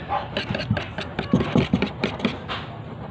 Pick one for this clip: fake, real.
real